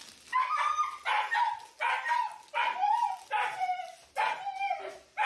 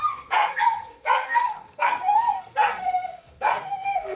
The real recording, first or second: first